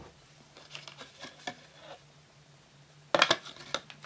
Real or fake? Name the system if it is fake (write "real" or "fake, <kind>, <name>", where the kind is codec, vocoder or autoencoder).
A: real